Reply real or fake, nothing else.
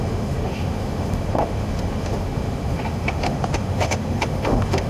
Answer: fake